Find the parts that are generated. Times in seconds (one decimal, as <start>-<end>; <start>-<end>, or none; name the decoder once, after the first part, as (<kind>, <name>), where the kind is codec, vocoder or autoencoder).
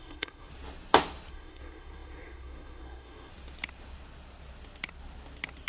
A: 0.0-0.5 (codec, SNAC); 1.3-3.3